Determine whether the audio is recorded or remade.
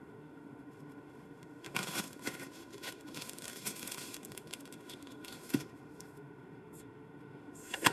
remade